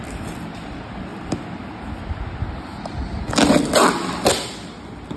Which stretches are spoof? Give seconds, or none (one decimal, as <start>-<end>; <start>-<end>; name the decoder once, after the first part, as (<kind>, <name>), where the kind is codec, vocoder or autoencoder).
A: none